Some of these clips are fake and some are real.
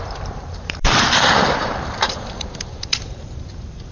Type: fake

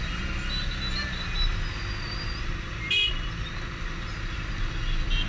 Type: real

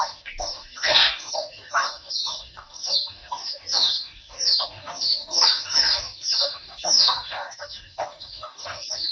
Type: fake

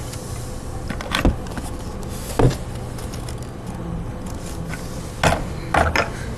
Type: real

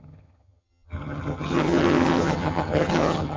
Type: fake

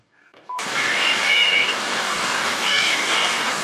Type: fake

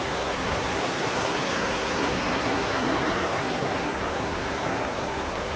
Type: fake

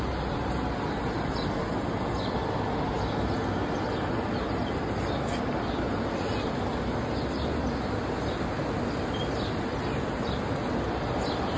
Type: real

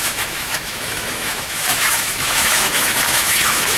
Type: fake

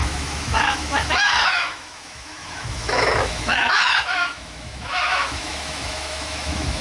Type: fake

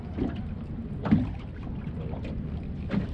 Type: real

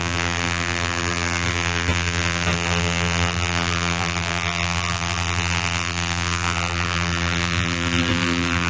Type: fake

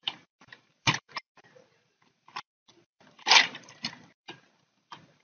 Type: fake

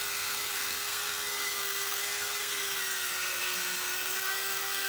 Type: fake